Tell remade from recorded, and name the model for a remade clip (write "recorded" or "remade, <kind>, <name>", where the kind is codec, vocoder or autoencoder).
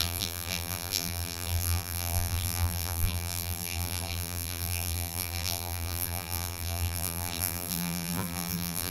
remade, vocoder, BigVGAN v2